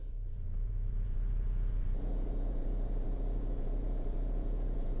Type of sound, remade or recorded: remade